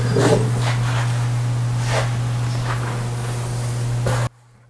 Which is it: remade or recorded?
recorded